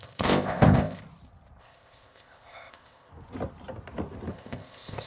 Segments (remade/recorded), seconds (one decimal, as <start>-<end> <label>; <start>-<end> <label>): 0.0-1.0 remade; 1.0-1.6 recorded; 1.6-3.1 remade; 3.1-4.3 recorded; 4.3-5.1 remade